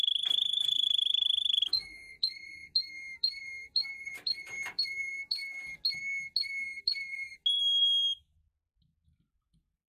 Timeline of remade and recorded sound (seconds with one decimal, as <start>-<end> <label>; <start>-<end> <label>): 0.0-2.6 remade; 2.6-3.2 recorded; 3.2-5.4 remade; 5.4-6.8 recorded; 6.8-7.3 remade; 7.3-9.3 recorded; 9.3-9.9 remade